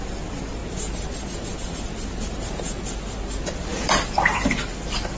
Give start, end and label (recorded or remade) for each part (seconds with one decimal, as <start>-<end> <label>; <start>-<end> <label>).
0.0-0.6 remade; 0.6-3.7 recorded; 3.7-5.2 remade